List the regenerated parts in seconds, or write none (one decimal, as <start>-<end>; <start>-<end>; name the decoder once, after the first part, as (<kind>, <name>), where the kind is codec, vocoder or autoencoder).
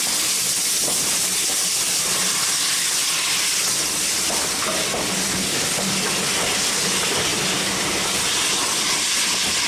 7.3-8.3 (vocoder, BigVGAN v2)